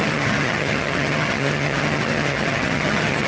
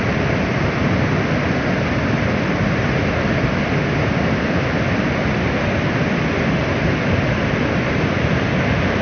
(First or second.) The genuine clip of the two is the second